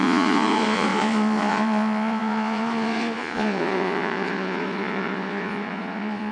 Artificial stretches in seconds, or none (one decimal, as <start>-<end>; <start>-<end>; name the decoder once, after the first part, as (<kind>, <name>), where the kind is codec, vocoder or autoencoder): 0.0-6.3 (vocoder, Vocos)